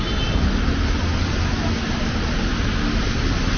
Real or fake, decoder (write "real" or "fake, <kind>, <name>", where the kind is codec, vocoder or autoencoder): real